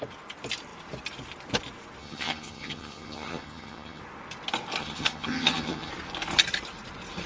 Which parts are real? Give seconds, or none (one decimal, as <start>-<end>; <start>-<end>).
0.0-2.0; 4.0-4.8; 5.9-7.3